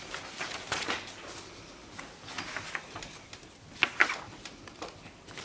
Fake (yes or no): no